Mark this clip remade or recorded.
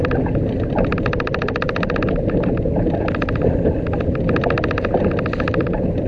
recorded